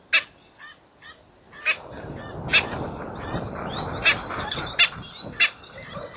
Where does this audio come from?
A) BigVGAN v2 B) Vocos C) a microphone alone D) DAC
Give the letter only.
C